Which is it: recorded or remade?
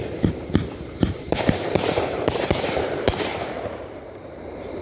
remade